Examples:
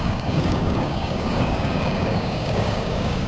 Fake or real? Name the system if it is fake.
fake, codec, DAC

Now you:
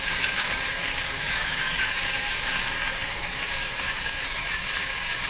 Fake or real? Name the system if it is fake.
fake, codec, DAC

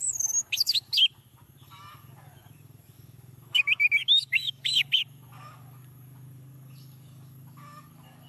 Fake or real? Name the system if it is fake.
fake, codec, DAC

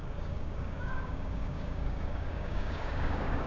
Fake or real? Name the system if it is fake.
fake, codec, DAC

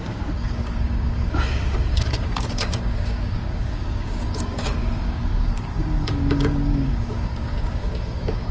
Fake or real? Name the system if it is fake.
fake, codec, DAC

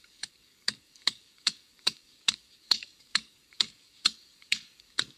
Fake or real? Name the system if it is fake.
fake, codec, DAC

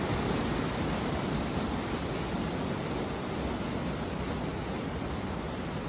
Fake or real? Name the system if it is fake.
real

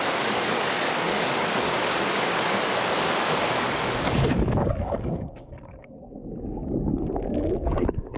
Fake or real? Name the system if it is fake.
fake, codec, DAC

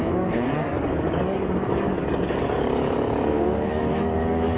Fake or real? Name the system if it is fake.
fake, codec, DAC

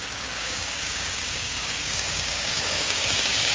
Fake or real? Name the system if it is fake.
fake, codec, DAC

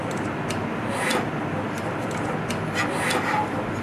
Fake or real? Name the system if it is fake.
real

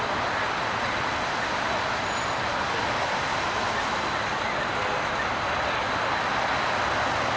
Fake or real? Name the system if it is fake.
real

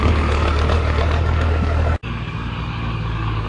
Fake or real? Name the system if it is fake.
fake, codec, DAC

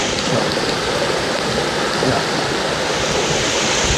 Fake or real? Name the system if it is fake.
real